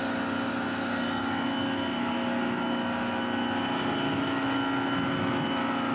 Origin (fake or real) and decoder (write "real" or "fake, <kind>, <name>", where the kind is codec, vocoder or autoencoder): real